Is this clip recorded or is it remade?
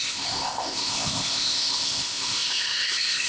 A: remade